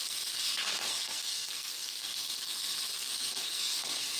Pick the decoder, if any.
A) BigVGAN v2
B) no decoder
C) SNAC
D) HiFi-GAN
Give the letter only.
C